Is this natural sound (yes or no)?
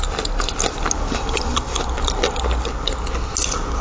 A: yes